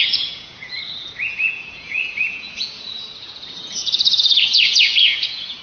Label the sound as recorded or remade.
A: remade